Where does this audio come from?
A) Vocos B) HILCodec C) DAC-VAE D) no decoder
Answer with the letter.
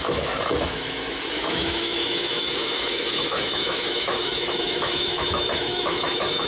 C